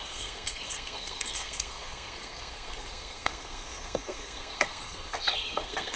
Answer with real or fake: fake